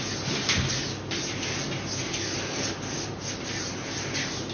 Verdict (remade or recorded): recorded